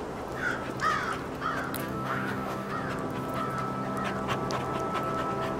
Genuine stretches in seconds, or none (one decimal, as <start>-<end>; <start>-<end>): 0.0-1.8; 2.7-5.6